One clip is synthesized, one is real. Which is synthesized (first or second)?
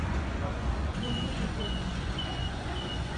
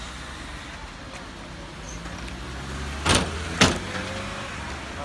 first